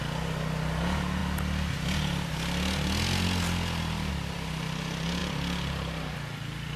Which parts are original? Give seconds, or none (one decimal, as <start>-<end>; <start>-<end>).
0.0-5.2